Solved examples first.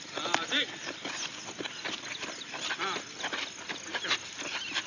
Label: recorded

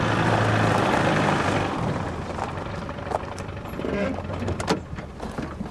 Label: remade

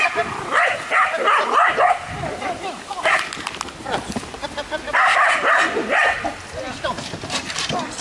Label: remade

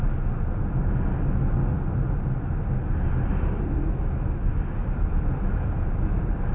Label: recorded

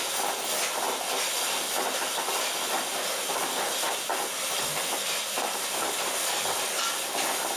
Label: recorded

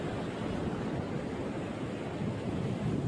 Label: recorded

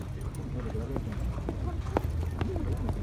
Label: recorded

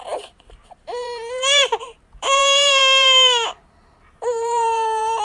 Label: remade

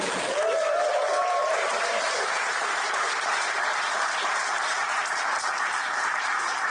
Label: remade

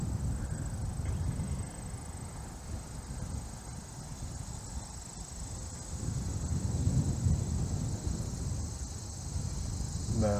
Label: recorded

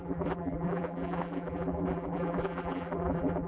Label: remade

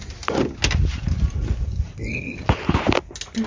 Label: recorded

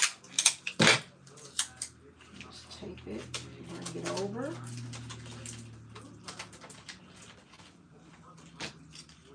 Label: recorded